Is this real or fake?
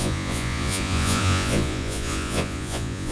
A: fake